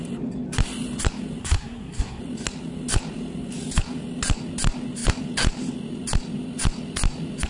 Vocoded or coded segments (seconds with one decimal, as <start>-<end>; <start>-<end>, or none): 1.4-2.2